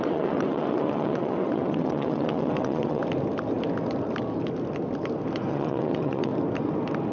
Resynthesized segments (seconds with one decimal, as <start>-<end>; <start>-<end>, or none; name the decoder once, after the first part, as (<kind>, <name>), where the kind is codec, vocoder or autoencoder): 0.0-3.0 (vocoder, WaveNeXt); 5.5-6.3